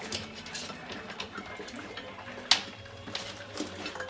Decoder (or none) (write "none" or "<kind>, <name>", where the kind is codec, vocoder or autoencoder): none